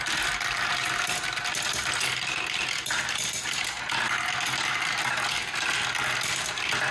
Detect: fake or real real